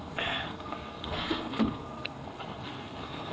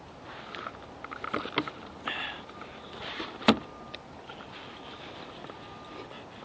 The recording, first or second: second